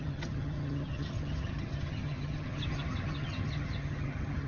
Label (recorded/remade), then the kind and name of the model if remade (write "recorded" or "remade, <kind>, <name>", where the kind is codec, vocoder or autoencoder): remade, vocoder, HiFi-GAN